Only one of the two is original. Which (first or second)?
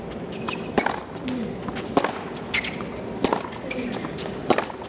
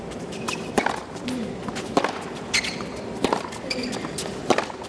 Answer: first